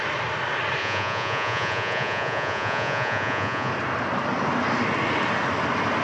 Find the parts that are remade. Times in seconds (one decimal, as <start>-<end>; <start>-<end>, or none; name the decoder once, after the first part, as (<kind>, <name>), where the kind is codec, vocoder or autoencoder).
0.8-3.7 (vocoder, Vocos)